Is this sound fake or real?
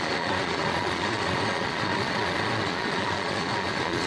fake